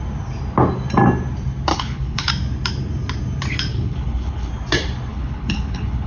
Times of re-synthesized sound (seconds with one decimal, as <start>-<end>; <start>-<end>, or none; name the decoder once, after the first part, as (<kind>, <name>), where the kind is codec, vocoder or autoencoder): 1.7-2.3 (codec, HILCodec); 3.7-4.5; 5.1-6.1